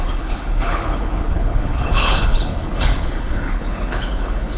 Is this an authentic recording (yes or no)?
no